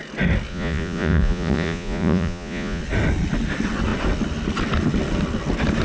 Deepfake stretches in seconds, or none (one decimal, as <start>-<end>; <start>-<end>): 0.5-2.8